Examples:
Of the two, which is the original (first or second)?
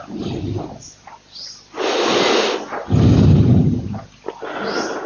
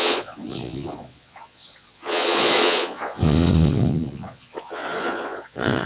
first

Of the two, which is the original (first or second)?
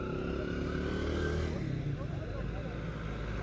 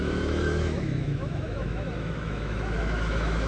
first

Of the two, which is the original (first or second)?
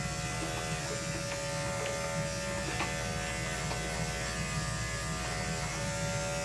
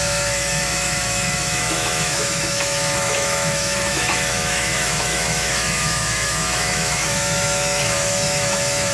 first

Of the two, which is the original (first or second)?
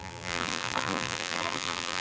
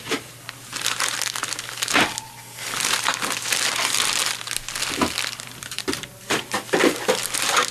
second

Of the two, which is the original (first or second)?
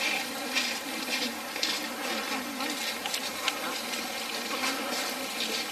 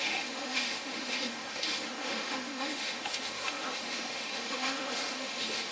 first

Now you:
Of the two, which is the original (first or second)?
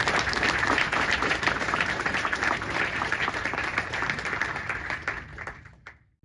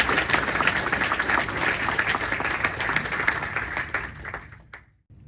second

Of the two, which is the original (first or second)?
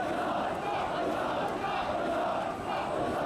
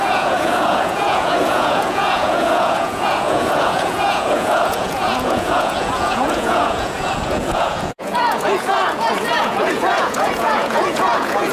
first